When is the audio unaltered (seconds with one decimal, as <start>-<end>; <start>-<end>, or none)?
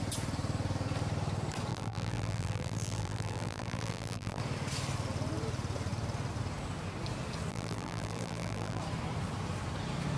0.0-1.7; 4.4-7.5; 8.8-10.2